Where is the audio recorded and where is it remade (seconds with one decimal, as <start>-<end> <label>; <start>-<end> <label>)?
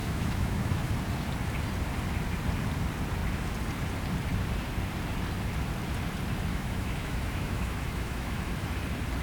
0.0-0.9 remade; 0.9-6.5 recorded; 6.5-8.4 remade; 8.4-9.2 recorded